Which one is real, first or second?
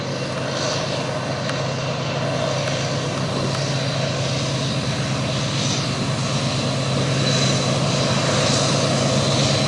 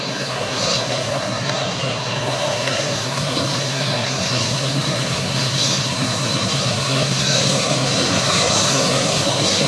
first